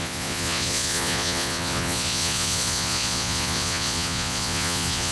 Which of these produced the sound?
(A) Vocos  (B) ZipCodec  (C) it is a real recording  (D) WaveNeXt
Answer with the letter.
A